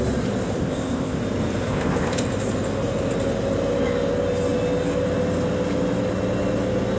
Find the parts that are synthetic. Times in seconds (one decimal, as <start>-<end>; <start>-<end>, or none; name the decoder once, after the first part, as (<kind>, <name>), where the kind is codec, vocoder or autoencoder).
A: 0.6-1.2 (codec, ZipCodec); 1.7-2.2